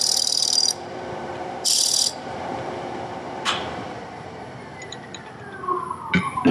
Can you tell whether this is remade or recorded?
remade